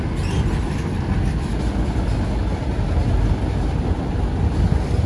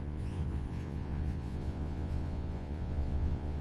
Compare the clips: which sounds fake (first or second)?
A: second